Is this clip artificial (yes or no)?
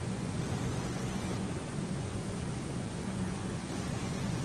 yes